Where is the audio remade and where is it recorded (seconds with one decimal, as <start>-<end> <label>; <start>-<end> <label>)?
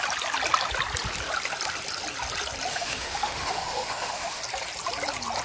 0.0-2.7 recorded; 2.7-4.4 remade; 4.4-5.4 recorded